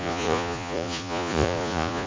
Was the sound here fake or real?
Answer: fake